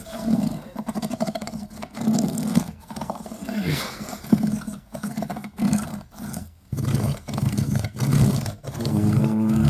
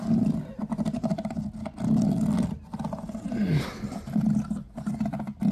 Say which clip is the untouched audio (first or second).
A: second